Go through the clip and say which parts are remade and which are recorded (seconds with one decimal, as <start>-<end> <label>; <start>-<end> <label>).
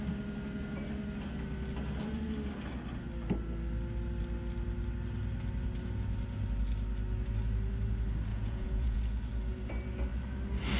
0.0-8.3 recorded; 8.3-9.0 remade; 9.0-10.8 recorded